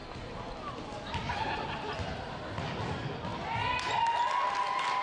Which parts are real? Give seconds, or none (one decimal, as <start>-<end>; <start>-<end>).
0.0-5.0

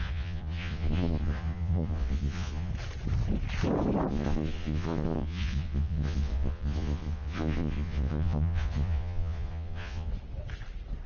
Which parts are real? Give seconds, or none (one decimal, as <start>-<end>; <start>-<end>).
2.7-4.1; 10.1-11.1

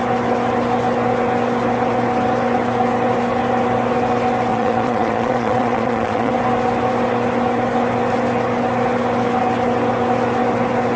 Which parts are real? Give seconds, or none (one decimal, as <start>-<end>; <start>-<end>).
0.0-4.5; 6.3-11.0

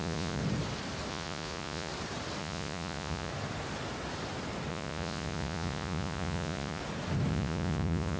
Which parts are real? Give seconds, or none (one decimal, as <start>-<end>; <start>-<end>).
0.4-1.1; 1.9-2.4; 3.3-4.7; 6.8-7.3

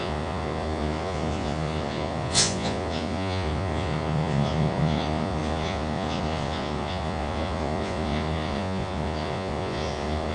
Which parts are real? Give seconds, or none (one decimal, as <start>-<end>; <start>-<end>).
none

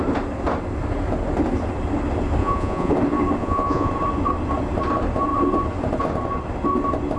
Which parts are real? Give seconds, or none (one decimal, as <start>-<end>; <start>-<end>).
0.0-2.4; 2.9-3.4; 3.9-7.2

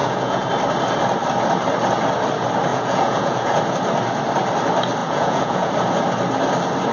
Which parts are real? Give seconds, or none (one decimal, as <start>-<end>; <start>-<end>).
0.5-2.7; 3.6-5.0; 5.7-6.9